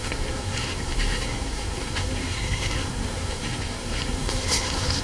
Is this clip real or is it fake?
fake